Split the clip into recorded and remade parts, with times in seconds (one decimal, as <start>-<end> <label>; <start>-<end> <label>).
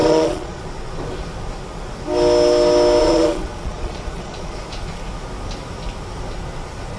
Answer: 0.0-0.6 remade; 0.6-3.0 recorded; 3.0-4.6 remade; 4.6-7.0 recorded